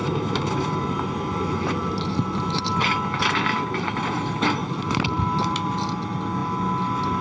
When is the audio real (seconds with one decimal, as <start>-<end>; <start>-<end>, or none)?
2.9-4.6; 6.0-7.2